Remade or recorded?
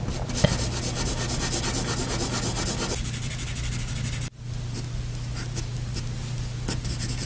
recorded